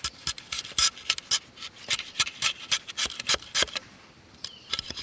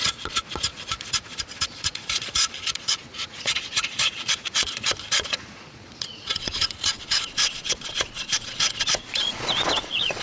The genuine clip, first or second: first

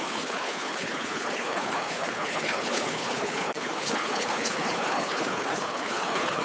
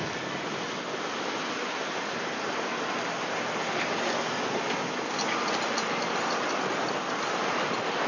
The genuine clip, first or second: second